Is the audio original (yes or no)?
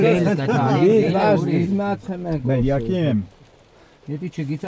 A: yes